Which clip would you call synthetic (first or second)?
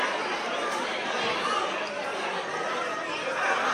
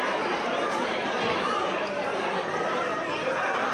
second